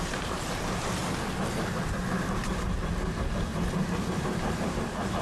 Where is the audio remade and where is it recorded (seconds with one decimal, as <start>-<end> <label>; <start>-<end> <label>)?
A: 0.0-1.0 remade; 1.0-2.5 recorded; 2.5-3.5 remade; 3.5-4.1 recorded; 4.1-5.2 remade